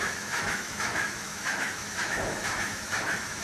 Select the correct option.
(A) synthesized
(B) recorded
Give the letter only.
A